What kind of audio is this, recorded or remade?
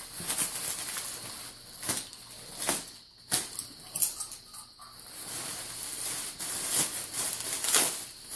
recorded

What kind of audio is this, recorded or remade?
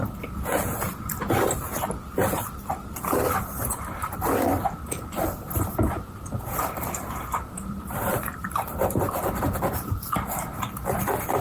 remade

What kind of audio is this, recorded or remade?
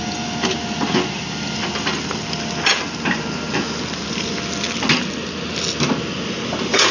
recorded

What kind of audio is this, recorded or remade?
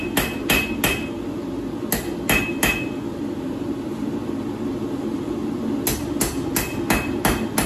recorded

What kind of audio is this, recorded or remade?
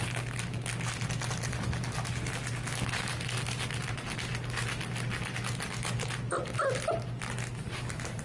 recorded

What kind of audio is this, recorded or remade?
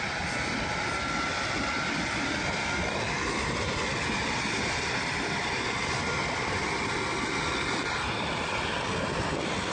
recorded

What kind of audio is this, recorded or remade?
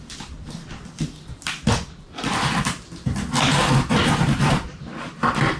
remade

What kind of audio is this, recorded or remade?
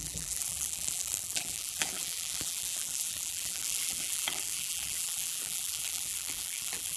remade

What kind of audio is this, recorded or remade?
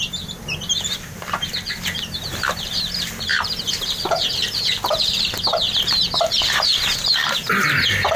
remade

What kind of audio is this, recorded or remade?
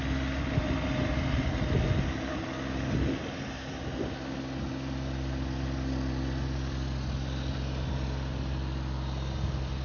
recorded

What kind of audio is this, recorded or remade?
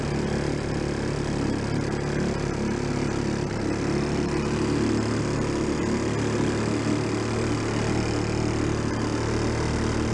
recorded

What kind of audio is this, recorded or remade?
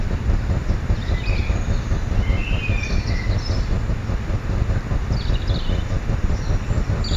remade